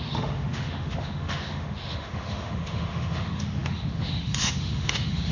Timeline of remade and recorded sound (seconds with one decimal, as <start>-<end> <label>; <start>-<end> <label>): 0.0-5.3 remade